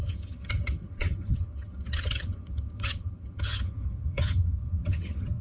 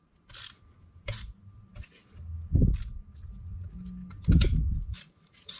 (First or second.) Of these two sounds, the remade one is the first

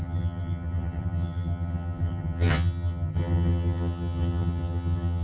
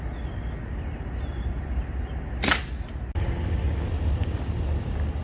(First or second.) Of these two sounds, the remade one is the first